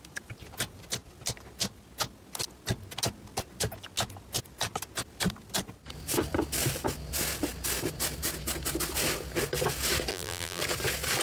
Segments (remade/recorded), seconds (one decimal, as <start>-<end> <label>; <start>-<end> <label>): 0.0-10.1 recorded; 10.1-10.6 remade; 10.6-11.2 recorded